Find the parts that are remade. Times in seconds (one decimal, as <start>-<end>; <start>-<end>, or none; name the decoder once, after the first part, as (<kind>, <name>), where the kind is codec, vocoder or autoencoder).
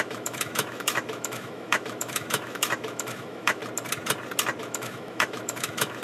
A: 0.0-3.6 (autoencoder, DAC-VAE); 4.6-6.0